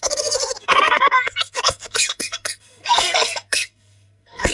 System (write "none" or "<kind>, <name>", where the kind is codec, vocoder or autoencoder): codec, SNAC